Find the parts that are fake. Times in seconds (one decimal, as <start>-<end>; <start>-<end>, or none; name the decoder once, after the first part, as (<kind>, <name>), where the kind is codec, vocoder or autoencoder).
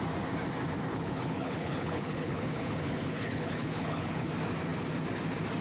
0.9-4.3 (codec, HILCodec)